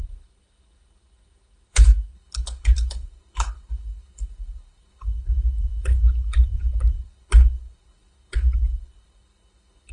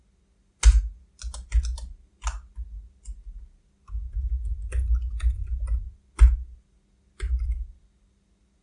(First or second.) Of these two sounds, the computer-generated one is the first